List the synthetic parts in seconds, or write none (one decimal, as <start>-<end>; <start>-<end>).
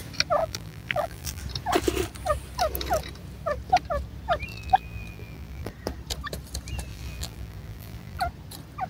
0.4-1.4; 4.5-5.7; 6.9-8.2